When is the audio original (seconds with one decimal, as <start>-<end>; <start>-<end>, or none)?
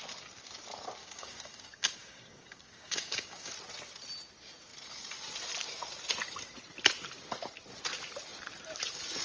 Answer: 0.0-1.0; 3.5-9.2